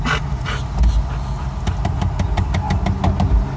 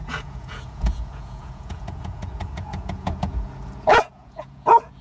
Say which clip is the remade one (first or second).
second